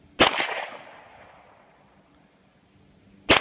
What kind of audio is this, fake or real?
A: real